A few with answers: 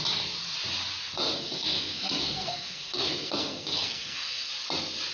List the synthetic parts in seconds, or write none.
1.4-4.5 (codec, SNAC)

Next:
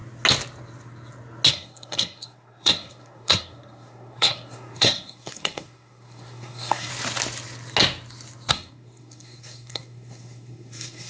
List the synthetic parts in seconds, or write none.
1.5-6.9 (codec, SNAC); 8.5-11.1